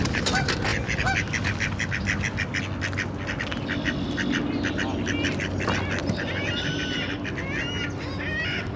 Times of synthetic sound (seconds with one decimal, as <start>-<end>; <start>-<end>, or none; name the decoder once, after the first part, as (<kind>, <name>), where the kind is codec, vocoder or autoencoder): 6.0-6.5 (vocoder, BigVGAN v2)